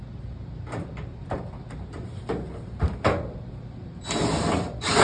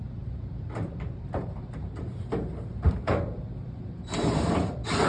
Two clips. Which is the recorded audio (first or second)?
first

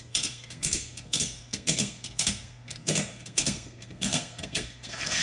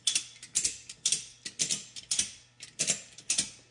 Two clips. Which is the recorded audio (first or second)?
second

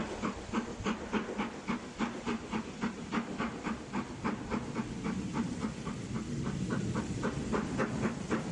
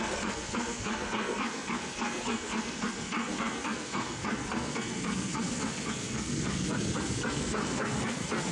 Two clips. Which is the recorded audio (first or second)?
first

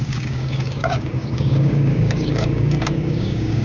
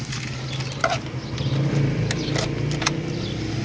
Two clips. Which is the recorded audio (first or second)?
second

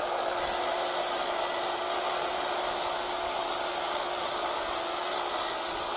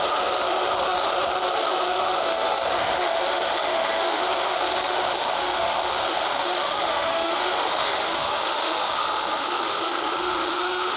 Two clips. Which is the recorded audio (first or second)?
first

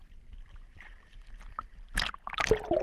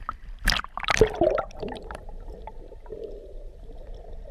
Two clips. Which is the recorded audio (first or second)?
first